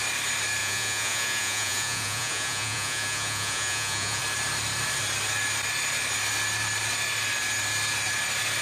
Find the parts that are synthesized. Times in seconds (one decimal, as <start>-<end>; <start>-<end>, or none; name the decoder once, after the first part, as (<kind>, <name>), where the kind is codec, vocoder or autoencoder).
0.6-4.2 (vocoder, Vocos)